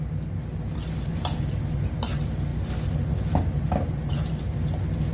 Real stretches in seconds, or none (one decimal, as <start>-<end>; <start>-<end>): 0.0-5.1